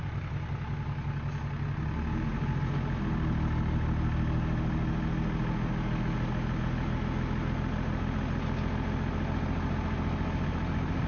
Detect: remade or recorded recorded